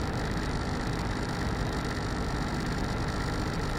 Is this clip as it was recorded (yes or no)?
yes